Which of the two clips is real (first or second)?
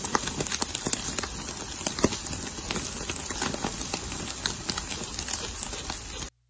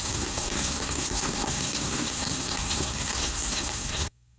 first